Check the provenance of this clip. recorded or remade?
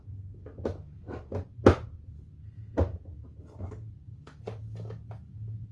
recorded